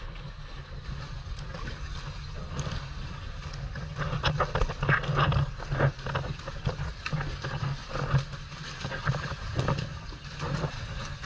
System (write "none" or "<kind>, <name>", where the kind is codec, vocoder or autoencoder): none